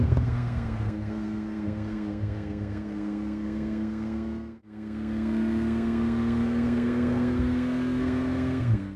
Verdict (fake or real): fake